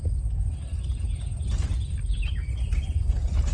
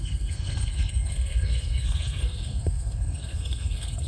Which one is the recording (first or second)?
first